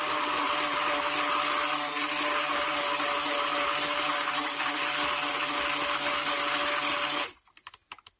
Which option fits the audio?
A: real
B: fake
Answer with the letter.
A